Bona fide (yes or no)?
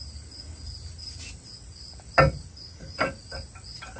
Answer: yes